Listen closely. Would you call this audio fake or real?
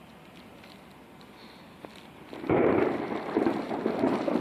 real